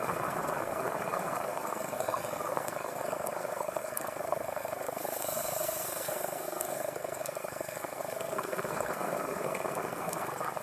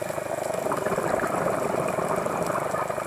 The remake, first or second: first